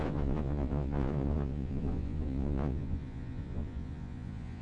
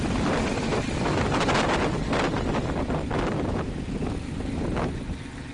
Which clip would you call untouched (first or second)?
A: second